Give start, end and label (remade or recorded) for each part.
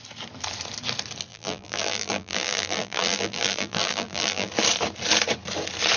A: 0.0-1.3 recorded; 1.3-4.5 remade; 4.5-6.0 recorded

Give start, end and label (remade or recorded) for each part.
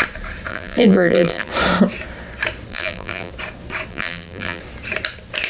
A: 0.0-0.5 recorded; 0.5-1.5 remade; 1.5-2.7 recorded; 2.7-3.3 remade; 3.3-3.9 recorded; 3.9-4.6 remade; 4.6-5.5 recorded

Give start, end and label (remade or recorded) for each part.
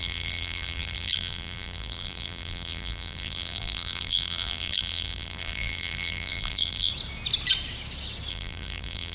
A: 0.0-6.9 remade; 6.9-8.3 recorded; 8.3-9.1 remade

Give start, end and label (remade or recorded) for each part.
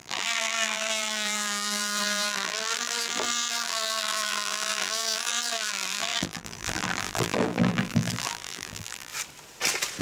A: 0.0-9.1 remade; 9.1-10.0 recorded